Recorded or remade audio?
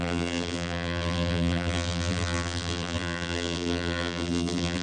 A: remade